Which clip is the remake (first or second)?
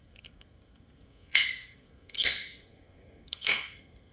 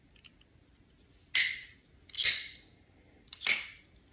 first